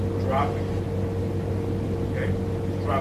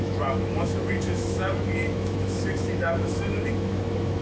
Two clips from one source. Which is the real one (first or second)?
first